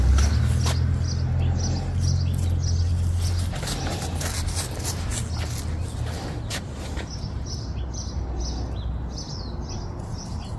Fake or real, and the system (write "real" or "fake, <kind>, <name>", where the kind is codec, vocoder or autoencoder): real